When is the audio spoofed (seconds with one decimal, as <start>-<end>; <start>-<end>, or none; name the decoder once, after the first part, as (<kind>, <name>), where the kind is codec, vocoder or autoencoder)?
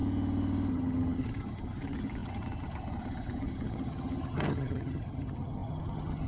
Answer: 0.7-6.3 (vocoder, HiFi-GAN)